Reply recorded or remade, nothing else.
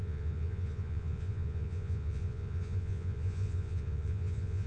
remade